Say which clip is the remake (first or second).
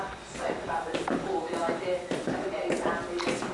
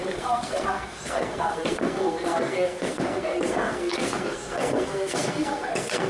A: second